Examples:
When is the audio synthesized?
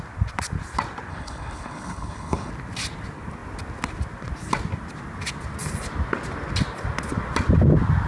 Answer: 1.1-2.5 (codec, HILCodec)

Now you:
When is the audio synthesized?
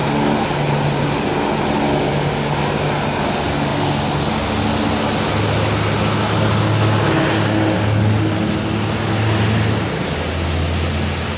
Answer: none